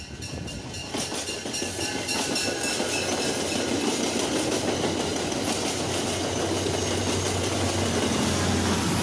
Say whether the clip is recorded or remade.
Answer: recorded